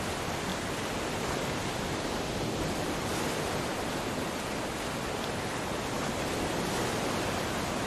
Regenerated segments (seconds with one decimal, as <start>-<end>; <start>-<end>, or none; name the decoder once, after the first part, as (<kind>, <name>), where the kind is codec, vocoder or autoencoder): none